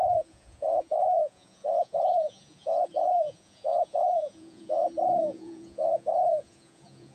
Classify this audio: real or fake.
fake